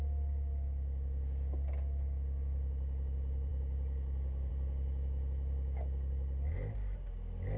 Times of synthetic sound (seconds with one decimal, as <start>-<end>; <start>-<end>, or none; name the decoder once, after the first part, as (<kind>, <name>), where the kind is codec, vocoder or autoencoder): none